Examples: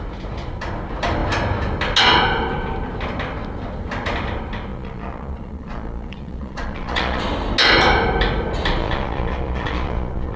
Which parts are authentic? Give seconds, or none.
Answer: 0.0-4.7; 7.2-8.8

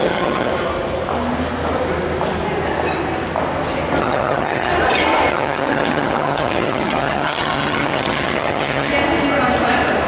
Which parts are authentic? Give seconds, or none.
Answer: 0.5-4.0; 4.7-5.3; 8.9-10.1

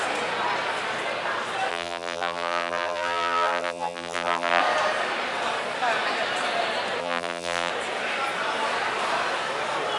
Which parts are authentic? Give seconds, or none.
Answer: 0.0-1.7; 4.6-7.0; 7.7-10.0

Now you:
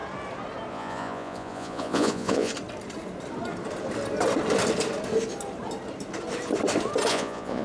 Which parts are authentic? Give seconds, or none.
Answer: 0.0-0.7; 2.5-7.1